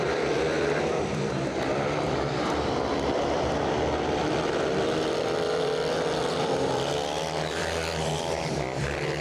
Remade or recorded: remade